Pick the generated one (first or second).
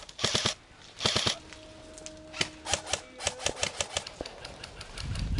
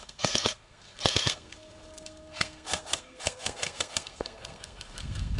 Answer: second